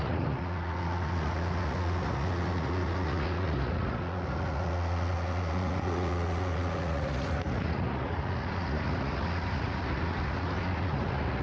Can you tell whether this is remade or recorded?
remade